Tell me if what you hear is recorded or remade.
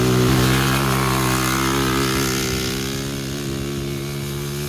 recorded